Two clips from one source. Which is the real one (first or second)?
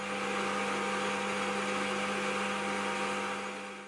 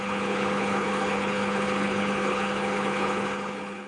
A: first